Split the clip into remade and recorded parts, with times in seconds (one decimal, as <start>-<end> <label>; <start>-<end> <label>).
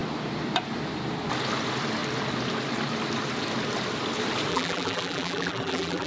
0.0-4.5 recorded; 4.5-6.1 remade